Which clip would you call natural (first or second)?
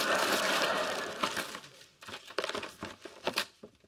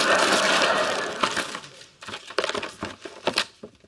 second